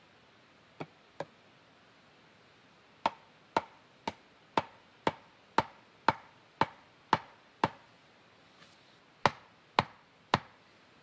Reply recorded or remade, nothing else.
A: recorded